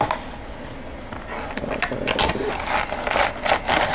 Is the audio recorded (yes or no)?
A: yes